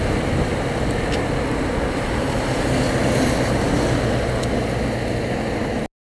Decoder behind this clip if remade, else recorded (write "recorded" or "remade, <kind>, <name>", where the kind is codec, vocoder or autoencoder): recorded